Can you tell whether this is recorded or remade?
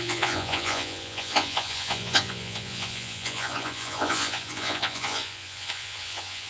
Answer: remade